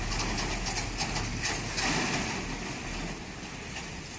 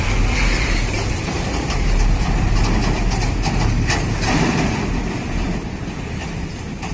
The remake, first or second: second